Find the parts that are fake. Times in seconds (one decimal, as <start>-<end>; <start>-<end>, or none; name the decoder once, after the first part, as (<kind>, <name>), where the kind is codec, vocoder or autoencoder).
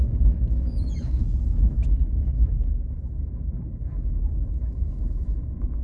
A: 0.0-1.2 (autoencoder, DAC-VAE); 1.7-5.8